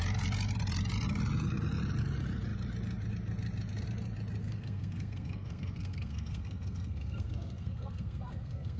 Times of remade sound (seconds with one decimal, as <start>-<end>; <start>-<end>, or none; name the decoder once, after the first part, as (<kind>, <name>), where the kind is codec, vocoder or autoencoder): 4.4-8.8 (codec, SNAC)